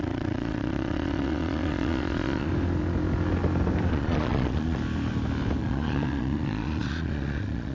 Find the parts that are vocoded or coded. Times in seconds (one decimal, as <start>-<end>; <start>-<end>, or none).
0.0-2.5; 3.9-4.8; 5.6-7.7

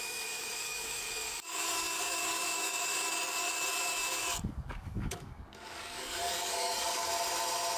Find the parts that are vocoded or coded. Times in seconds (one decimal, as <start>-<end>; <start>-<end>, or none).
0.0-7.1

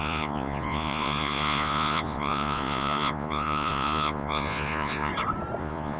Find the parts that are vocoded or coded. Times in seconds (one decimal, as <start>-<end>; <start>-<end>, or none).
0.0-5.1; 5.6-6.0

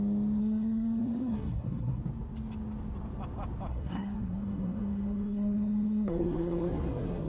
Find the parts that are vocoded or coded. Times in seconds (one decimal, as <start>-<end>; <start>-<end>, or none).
0.4-2.0; 3.7-7.3

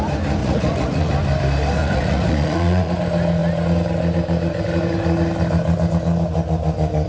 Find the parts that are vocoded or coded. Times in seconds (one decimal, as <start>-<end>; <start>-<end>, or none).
0.4-1.1; 1.8-2.9

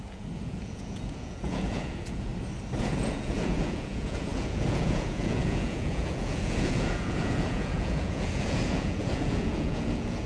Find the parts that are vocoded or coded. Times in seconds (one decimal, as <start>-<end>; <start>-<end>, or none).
0.0-2.3; 2.8-10.3

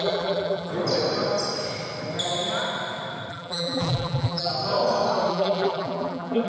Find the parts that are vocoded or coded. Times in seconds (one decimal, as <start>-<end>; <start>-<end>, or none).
0.0-0.7; 3.3-4.5; 5.3-6.5